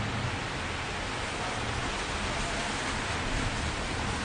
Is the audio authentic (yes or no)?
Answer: yes